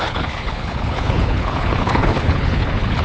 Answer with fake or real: fake